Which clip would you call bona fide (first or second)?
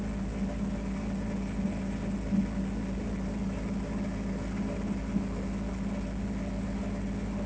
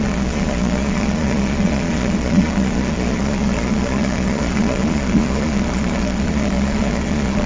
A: first